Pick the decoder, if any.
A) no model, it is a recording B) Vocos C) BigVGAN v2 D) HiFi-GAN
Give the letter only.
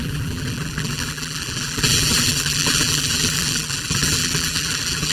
C